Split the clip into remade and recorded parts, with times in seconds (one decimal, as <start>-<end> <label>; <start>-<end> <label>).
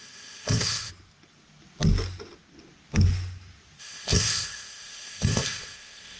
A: 0.0-0.9 remade; 0.9-3.8 recorded; 3.8-6.2 remade